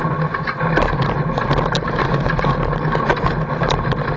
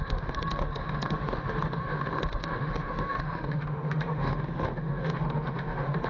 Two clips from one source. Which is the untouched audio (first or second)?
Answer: first